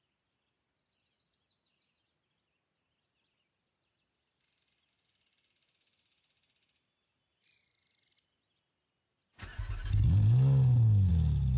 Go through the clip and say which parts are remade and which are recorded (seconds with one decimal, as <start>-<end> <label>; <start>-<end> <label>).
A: 0.0-11.6 recorded